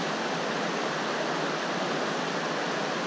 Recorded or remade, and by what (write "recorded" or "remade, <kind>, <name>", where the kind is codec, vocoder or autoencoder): recorded